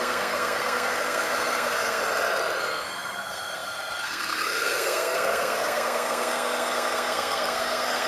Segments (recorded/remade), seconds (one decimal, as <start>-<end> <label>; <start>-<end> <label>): 0.0-2.0 remade; 2.0-2.6 recorded; 2.6-8.1 remade